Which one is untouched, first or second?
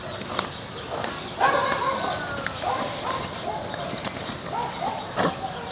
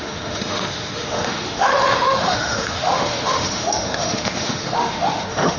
first